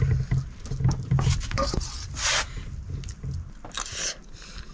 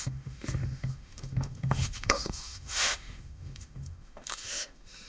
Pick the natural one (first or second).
first